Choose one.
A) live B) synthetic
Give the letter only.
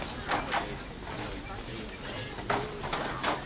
A